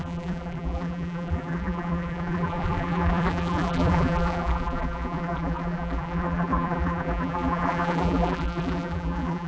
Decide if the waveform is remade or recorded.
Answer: remade